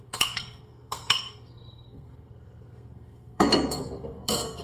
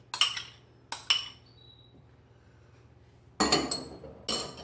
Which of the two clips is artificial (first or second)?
first